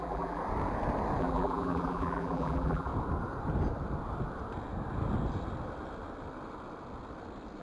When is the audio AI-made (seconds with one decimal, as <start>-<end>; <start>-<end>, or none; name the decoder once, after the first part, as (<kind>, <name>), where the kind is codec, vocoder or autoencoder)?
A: 0.0-0.4 (vocoder, BigVGAN v2); 1.2-2.9